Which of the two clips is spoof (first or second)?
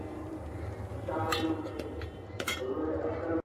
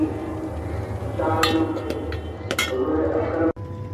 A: first